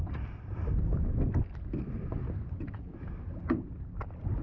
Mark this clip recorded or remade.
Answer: recorded